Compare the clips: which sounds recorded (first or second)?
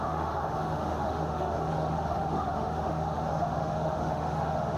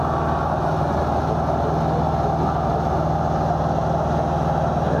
second